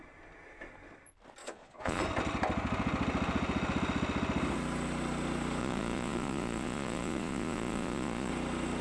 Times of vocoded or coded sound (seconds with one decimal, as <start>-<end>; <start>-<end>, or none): 1.4-2.0; 5.6-8.3